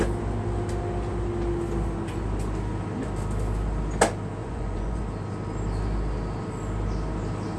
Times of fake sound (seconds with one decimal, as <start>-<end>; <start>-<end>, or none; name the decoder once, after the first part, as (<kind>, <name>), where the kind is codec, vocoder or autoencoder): 4.4-5.0 (vocoder, Vocos)

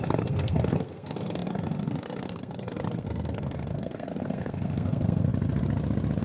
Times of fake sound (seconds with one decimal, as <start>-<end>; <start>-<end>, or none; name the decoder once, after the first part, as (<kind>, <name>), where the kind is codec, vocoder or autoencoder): 0.0-5.3 (codec, SNAC)

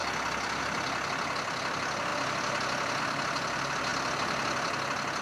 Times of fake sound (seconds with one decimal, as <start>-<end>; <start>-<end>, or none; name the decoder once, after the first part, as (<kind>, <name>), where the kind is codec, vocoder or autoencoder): none

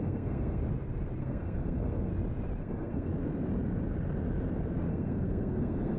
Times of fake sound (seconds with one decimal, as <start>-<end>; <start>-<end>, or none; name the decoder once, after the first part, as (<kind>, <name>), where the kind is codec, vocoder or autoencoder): 0.0-0.6 (codec, SNAC); 1.2-2.1; 2.6-3.1; 4.9-6.0

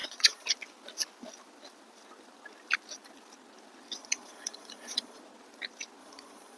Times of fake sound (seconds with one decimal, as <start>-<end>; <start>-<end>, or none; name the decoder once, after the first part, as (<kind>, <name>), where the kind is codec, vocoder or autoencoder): 0.0-0.5 (vocoder, Vocos); 4.0-5.2; 6.0-6.6

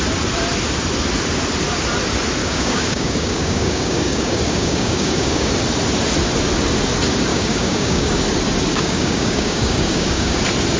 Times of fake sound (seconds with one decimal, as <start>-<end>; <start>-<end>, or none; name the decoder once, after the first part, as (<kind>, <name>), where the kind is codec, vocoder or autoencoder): 2.4-5.5 (codec, DAC); 7.3-8.2; 8.7-10.4

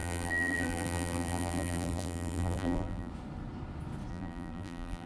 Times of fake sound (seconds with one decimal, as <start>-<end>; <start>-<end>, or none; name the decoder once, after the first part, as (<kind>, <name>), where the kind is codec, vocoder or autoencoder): 0.0-3.1 (vocoder, BigVGAN v2); 4.1-5.1

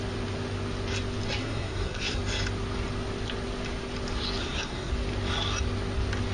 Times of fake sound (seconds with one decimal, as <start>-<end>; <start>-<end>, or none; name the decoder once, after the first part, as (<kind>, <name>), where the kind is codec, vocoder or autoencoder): 1.4-2.2 (codec, SNAC); 4.4-4.9